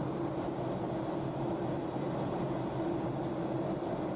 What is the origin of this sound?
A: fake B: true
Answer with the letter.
B